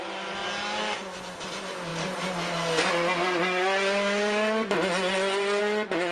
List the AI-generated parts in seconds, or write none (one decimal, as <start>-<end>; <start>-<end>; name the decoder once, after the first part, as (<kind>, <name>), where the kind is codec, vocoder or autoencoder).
none